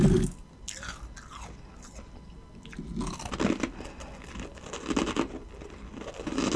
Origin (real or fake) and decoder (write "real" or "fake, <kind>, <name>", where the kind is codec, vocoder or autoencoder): real